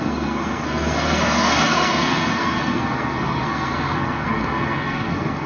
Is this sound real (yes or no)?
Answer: no